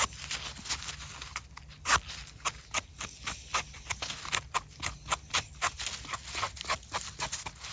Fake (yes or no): no